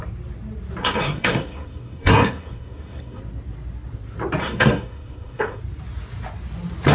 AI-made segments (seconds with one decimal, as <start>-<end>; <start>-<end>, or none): 0.8-3.2; 4.4-5.6